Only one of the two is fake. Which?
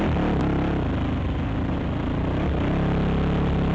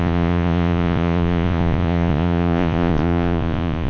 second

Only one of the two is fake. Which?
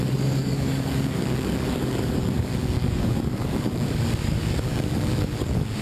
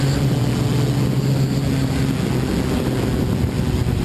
first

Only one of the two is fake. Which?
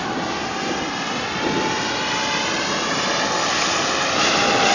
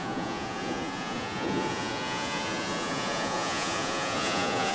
second